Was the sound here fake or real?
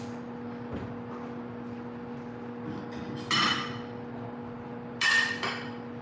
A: real